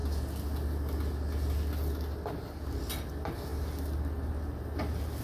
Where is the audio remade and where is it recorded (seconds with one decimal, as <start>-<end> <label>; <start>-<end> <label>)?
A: 0.0-5.2 recorded